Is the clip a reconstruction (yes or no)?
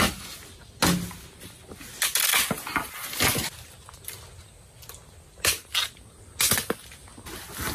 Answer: no